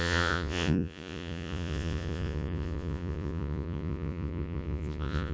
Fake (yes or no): yes